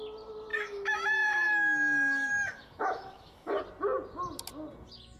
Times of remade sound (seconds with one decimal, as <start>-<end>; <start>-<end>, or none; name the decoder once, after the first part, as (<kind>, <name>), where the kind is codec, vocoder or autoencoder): 0.5-3.6 (autoencoder, DAC-VAE)